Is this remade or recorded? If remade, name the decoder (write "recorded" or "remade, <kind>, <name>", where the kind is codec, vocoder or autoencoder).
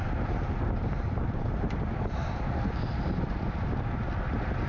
recorded